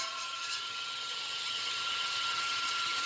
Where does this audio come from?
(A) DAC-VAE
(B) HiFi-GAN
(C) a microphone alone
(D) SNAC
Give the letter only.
B